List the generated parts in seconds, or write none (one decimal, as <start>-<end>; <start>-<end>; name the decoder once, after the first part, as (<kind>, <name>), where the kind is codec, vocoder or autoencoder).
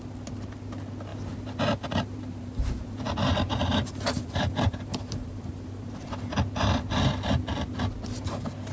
1.1-3.1 (vocoder, BigVGAN v2); 3.6-6.3